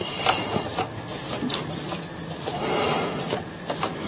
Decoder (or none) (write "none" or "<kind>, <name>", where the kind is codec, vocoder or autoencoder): vocoder, BigVGAN v2